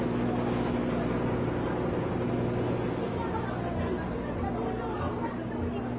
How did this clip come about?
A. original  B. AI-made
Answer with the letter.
A